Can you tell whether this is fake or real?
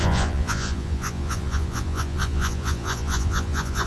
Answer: fake